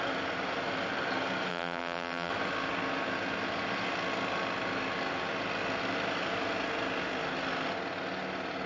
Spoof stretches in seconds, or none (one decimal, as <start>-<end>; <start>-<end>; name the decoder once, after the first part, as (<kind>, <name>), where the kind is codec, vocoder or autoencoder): 1.5-2.3 (vocoder, BigVGAN v2)